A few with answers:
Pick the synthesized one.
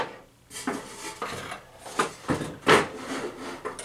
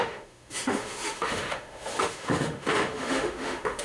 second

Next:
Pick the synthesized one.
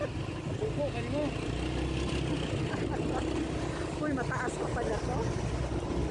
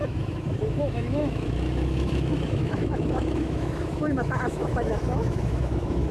second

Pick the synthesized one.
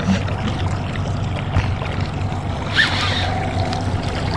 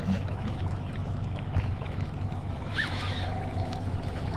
second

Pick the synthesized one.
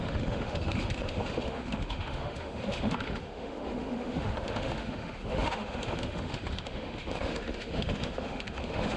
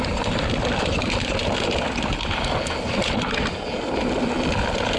first